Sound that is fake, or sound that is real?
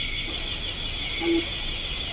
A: real